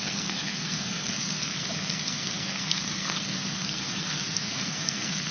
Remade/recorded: remade